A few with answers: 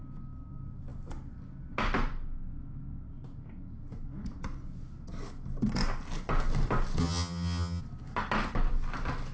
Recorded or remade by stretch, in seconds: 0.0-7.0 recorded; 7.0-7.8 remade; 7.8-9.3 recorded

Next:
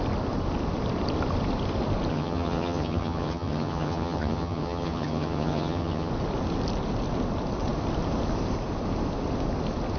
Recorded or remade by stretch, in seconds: 0.0-2.1 recorded; 2.1-6.1 remade; 6.1-10.0 recorded